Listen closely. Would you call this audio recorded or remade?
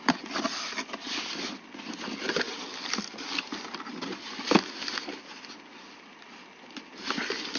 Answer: recorded